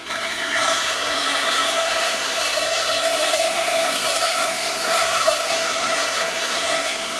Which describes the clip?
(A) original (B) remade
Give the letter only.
B